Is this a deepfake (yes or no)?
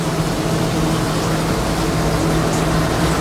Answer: no